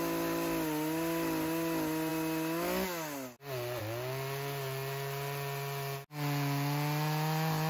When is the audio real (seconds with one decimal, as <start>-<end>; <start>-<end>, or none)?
0.0-7.7